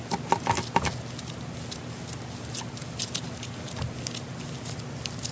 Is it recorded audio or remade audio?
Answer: recorded